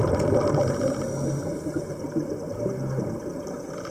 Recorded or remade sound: recorded